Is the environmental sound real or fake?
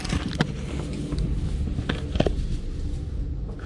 real